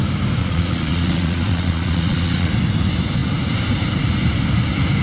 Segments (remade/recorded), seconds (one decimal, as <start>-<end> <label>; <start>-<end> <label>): 0.0-0.4 recorded; 0.4-2.5 remade; 2.5-5.0 recorded